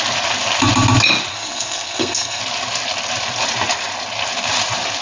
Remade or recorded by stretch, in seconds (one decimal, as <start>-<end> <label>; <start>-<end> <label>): 0.0-1.3 recorded; 1.3-2.4 remade; 2.4-5.0 recorded